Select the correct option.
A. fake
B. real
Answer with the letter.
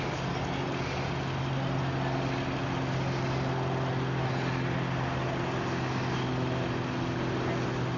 B